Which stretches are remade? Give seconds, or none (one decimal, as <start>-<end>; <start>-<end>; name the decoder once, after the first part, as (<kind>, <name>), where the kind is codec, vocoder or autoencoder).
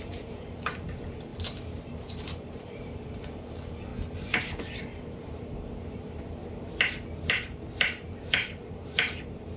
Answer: 0.0-1.3 (vocoder, BigVGAN v2); 1.9-6.4; 7.3-9.6